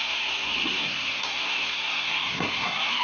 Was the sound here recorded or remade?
remade